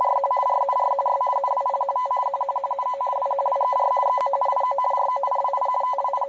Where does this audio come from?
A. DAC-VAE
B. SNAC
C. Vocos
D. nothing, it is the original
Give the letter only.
D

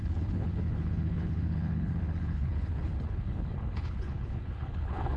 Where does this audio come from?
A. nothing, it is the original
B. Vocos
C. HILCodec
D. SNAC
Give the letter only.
C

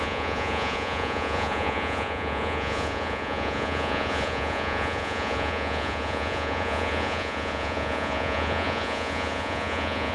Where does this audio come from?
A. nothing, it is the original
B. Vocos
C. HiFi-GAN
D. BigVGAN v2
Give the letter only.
B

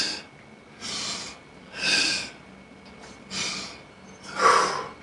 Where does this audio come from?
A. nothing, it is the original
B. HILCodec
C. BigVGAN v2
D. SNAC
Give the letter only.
A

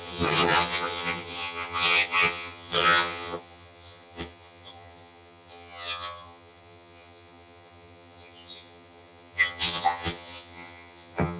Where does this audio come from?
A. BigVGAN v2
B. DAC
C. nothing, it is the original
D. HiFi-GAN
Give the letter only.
D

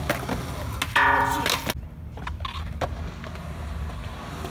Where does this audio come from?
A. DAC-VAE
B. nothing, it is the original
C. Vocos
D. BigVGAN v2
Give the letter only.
B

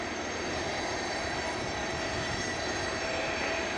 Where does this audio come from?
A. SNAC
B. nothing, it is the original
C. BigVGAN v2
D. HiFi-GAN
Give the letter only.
C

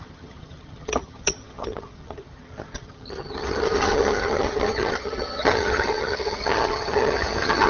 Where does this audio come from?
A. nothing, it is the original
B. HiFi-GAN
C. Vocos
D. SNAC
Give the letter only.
B